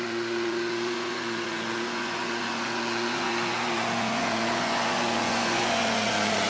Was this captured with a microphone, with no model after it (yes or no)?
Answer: no